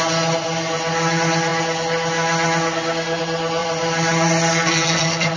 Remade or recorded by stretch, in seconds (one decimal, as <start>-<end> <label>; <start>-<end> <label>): 0.0-3.6 recorded; 3.6-4.3 remade; 4.3-5.4 recorded